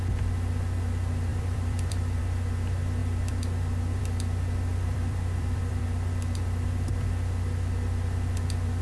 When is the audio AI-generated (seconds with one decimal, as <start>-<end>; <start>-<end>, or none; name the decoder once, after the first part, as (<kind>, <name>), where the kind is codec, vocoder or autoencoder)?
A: 1.3-2.2 (vocoder, BigVGAN v2); 3.0-4.0; 4.7-5.8